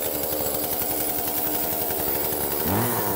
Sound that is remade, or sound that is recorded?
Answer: recorded